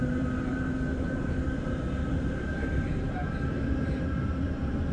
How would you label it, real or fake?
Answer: fake